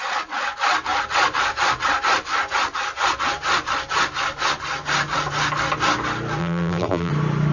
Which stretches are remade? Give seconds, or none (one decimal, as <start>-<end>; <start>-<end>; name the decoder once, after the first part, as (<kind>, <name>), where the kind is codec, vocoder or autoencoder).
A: 6.4-7.1 (vocoder, BigVGAN v2)